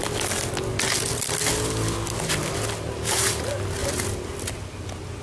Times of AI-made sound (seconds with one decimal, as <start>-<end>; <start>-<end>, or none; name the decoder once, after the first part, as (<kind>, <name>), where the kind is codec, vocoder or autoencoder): none